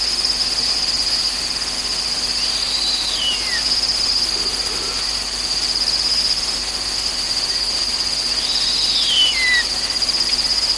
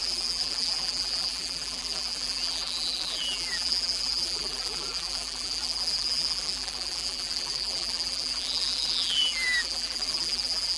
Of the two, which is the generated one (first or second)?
second